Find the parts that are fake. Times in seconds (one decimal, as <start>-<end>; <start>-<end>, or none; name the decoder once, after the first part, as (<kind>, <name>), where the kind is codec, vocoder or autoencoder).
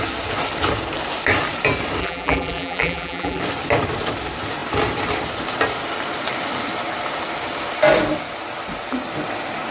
2.0-3.4 (vocoder, BigVGAN v2)